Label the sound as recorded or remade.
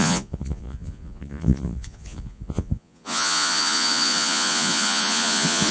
remade